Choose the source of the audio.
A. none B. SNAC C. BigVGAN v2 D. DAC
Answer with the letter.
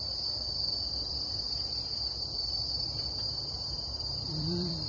C